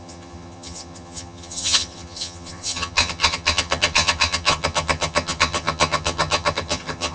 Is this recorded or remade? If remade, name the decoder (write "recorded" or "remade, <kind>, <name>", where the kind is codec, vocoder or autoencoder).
remade, vocoder, HiFi-GAN